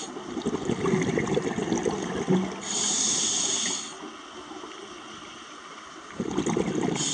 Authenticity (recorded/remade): recorded